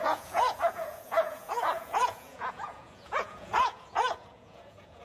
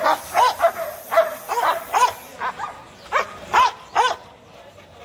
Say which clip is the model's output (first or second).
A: first